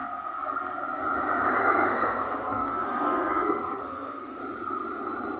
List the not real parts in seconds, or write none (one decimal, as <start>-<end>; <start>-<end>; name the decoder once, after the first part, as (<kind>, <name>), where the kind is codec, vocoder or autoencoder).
0.0-1.0 (codec, SNAC); 1.6-4.4